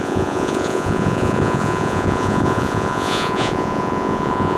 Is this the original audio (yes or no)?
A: no